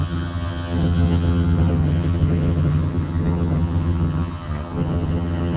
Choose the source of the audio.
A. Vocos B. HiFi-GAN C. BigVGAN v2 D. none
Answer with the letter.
B